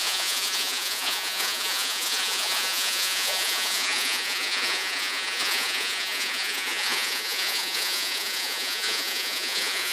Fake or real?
fake